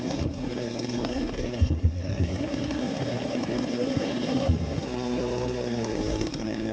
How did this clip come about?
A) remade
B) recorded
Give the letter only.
A